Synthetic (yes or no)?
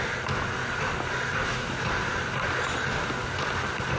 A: no